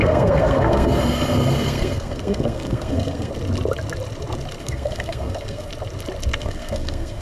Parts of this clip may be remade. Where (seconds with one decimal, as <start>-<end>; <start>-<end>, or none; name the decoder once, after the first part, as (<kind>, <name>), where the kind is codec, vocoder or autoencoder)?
0.0-3.3 (codec, SNAC); 4.6-5.7; 6.4-7.2

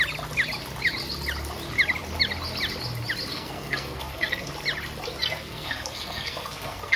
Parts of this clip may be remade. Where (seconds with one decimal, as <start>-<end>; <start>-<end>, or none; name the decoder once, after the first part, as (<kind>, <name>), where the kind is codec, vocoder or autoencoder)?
3.3-4.5 (codec, SNAC); 5.2-7.0

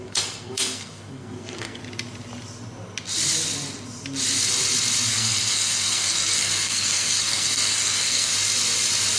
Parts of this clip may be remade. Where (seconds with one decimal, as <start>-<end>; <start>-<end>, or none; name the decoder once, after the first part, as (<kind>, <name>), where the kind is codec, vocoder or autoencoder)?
0.0-1.8 (codec, SNAC); 5.1-8.3

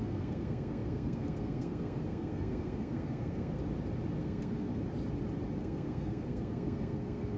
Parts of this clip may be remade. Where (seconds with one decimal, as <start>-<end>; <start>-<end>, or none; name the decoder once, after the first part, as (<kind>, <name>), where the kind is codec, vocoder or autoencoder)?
0.0-3.6 (codec, SNAC); 4.2-4.7; 5.6-7.4

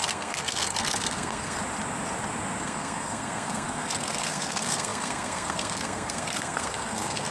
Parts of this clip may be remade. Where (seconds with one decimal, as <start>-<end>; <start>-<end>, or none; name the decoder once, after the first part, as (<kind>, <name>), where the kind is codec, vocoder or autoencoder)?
0.0-1.6 (codec, SNAC); 2.6-7.3